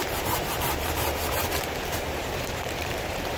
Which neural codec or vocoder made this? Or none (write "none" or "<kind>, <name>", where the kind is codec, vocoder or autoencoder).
vocoder, BigVGAN v2